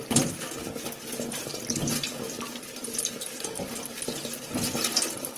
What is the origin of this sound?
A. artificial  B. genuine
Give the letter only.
B